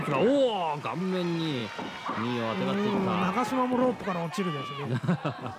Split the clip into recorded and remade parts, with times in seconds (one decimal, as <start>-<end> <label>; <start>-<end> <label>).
0.0-1.0 remade; 1.0-5.6 recorded